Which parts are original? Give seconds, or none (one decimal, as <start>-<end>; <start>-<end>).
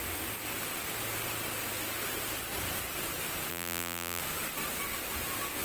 0.0-3.5; 4.2-5.6